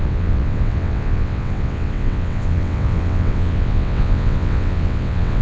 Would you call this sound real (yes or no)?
no